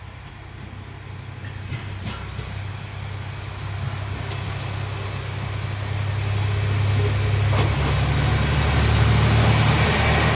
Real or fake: real